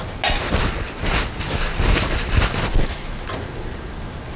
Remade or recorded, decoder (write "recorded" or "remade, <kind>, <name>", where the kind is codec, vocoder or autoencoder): recorded